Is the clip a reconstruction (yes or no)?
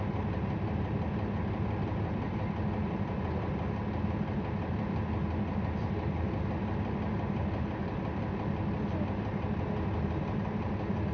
no